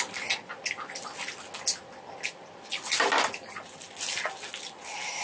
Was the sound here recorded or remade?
recorded